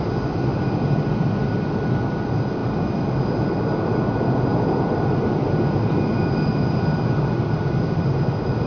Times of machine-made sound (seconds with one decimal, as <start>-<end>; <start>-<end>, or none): none